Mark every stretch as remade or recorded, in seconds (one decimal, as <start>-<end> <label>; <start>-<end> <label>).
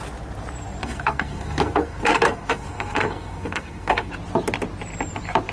0.0-0.8 recorded; 0.8-4.1 remade; 4.1-5.5 recorded